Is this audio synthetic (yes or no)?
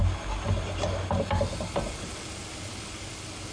no